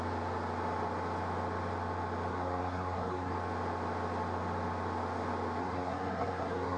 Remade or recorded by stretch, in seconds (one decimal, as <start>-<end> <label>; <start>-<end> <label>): 0.0-2.3 recorded; 2.3-3.3 remade; 3.3-5.6 recorded; 5.6-6.8 remade

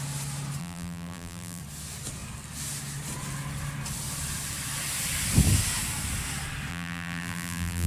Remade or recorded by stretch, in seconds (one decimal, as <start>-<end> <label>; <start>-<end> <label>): 0.0-0.6 recorded; 0.6-1.6 remade; 1.6-6.7 recorded; 6.7-7.9 remade